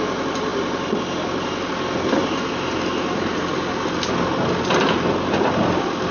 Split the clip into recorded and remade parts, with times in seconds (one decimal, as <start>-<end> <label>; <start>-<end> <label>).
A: 0.0-6.1 recorded